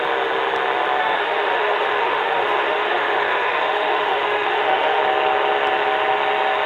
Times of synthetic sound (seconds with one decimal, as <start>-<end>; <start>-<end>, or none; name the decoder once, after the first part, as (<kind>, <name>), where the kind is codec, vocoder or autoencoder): 1.0-5.0 (autoencoder, DAC-VAE)